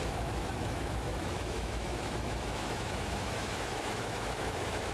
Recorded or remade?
remade